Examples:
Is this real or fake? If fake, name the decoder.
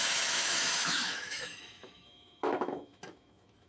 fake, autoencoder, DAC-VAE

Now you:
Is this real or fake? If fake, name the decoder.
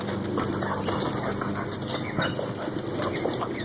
real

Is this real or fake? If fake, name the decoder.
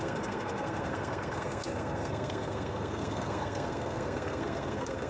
fake, codec, SNAC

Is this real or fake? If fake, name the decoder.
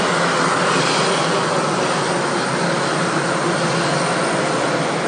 real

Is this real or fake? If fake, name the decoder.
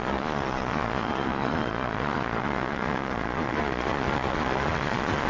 fake, vocoder, Vocos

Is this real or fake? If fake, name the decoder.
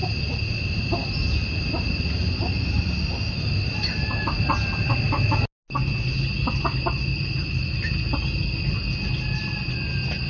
real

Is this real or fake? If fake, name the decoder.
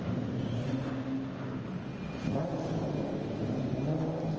real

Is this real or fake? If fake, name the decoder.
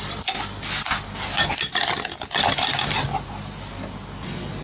real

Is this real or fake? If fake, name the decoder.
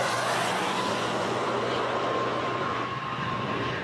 fake, vocoder, Vocos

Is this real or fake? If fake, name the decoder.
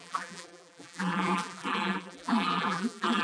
fake, vocoder, BigVGAN v2